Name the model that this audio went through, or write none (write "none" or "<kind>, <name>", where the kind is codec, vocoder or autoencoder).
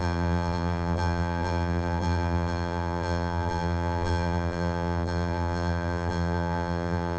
vocoder, BigVGAN v2